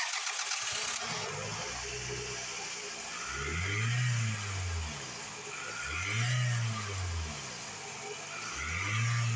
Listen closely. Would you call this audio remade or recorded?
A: recorded